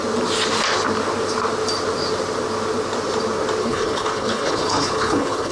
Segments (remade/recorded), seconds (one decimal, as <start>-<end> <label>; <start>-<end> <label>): 0.0-3.6 recorded; 3.6-5.5 remade